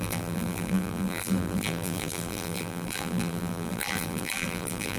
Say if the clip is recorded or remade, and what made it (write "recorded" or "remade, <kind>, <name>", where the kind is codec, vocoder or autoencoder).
remade, vocoder, BigVGAN v2